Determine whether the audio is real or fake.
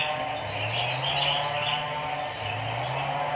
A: real